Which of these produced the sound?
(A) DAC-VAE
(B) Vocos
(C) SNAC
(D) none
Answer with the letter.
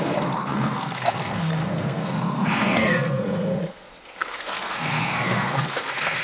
C